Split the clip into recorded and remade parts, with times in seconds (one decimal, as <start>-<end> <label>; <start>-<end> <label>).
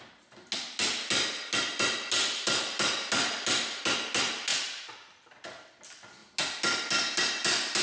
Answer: 0.0-7.8 recorded